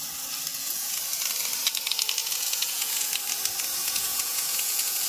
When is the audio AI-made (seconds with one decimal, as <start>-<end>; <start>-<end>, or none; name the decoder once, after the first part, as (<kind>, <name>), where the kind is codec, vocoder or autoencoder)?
0.5-1.0 (vocoder, Vocos); 2.2-3.1; 3.8-5.1